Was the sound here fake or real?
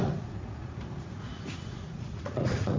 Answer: fake